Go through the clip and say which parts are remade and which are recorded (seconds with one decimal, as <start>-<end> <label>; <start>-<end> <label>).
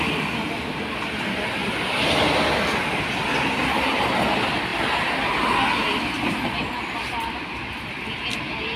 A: 0.0-8.8 recorded